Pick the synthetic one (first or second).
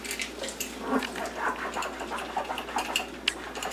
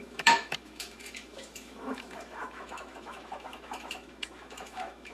second